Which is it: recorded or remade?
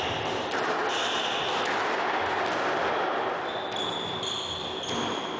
recorded